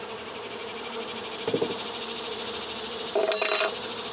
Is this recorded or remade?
recorded